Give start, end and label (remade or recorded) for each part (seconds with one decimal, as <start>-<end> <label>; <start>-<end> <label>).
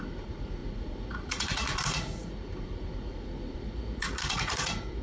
0.0-5.0 remade